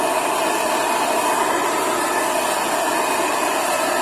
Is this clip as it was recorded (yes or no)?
yes